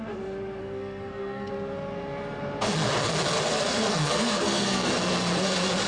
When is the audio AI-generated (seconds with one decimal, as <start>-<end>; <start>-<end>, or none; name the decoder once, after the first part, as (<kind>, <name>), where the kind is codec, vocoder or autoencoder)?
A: 0.6-1.5 (codec, SNAC); 3.5-4.9